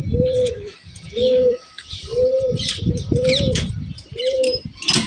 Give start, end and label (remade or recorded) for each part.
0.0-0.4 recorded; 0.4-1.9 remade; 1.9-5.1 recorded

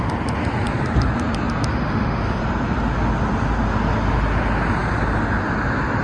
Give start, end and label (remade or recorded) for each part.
0.0-1.7 recorded; 1.7-2.4 remade; 2.4-6.0 recorded